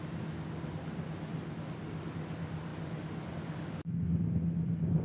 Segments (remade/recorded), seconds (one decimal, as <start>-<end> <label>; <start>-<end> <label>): 0.0-5.0 recorded